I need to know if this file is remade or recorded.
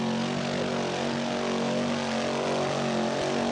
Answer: recorded